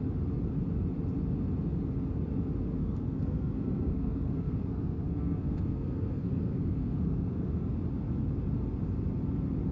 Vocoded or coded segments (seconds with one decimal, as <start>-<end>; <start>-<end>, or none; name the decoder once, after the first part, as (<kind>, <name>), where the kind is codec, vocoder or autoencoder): 2.8-7.5 (codec, SNAC)